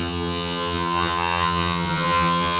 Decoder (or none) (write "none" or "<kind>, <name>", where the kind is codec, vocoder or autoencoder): vocoder, HiFi-GAN